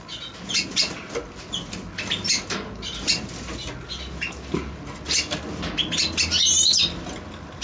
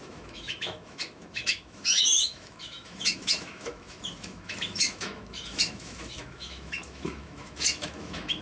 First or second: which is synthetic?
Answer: second